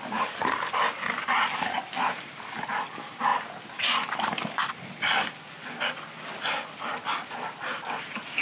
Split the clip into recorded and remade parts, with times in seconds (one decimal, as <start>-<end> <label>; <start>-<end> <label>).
0.0-8.4 recorded